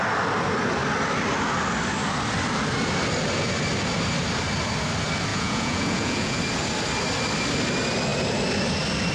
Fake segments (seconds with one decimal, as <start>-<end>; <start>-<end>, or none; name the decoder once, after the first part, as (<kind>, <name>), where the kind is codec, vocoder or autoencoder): 5.3-6.4 (vocoder, Vocos)